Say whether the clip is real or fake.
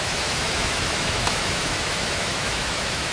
fake